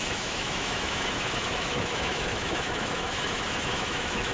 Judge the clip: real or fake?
fake